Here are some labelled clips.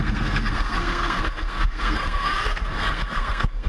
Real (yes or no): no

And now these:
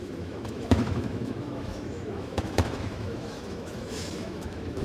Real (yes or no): no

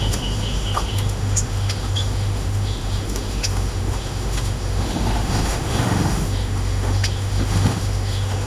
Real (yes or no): no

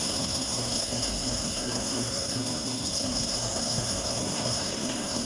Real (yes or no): no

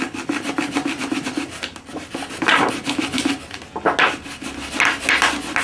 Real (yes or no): yes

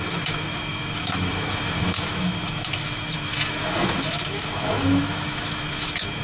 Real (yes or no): no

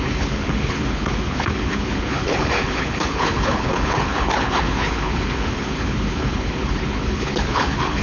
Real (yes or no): no